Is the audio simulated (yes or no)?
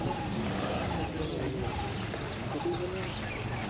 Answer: no